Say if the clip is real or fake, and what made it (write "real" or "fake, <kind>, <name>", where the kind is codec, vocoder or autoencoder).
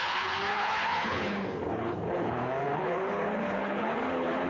fake, codec, HILCodec